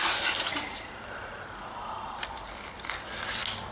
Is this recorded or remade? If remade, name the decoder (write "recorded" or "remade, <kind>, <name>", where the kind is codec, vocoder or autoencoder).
recorded